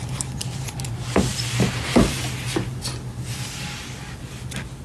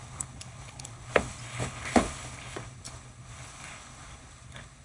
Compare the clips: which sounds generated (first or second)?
second